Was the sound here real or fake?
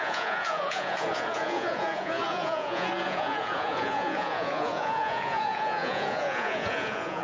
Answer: fake